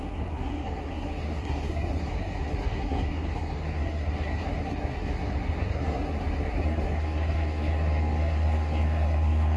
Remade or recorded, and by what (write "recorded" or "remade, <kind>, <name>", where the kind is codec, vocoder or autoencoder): remade, codec, SNAC